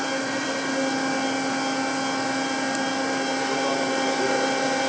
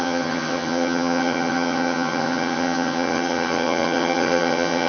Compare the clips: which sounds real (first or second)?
first